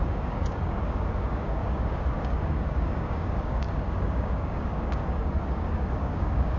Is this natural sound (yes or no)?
no